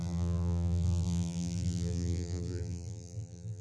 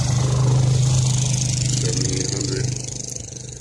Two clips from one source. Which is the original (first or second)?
second